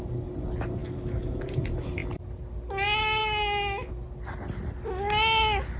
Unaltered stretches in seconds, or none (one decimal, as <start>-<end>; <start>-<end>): 0.0-0.8; 1.4-3.2; 3.9-5.8